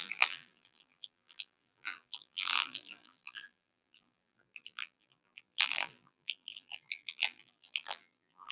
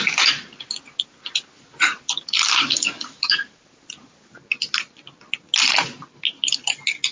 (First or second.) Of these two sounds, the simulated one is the first